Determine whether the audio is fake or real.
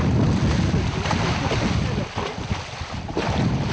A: real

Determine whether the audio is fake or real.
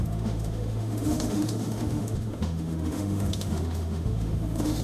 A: fake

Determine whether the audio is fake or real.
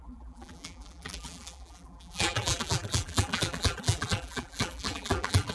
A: fake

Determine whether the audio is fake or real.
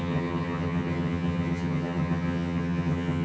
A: fake